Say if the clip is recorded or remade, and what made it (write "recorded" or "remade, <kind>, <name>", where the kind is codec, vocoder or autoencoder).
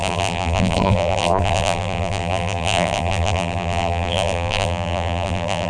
remade, vocoder, BigVGAN v2